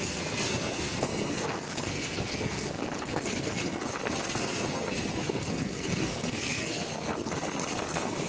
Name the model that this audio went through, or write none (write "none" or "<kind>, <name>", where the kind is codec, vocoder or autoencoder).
codec, SNAC